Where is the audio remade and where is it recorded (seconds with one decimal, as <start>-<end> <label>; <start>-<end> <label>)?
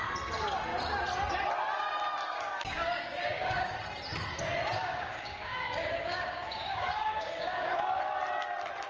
0.0-2.2 recorded; 2.2-3.7 remade; 3.7-4.8 recorded; 4.8-8.0 remade; 8.0-8.9 recorded